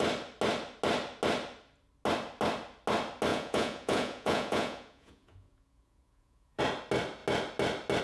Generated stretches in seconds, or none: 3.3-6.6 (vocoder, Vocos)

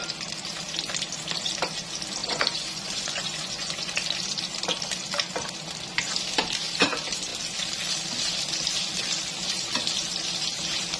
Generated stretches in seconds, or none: 2.2-3.9 (vocoder, Vocos)

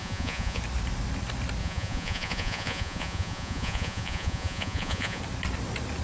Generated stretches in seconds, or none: 0.0-0.6 (vocoder, Vocos); 1.6-5.2

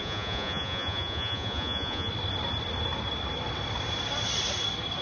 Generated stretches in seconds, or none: 0.0-2.1 (vocoder, Vocos)

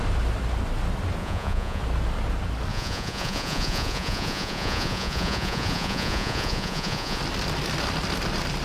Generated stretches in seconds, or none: 1.2-1.8 (vocoder, Vocos); 2.7-7.2